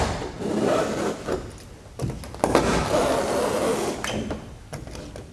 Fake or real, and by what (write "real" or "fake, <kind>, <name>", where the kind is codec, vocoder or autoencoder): real